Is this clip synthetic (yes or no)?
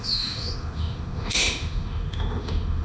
yes